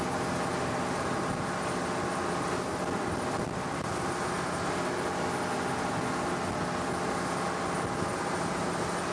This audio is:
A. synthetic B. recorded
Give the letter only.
B